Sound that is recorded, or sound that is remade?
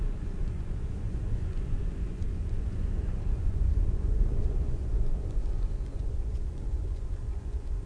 remade